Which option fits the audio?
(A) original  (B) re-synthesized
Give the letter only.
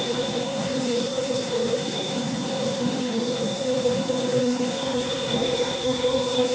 B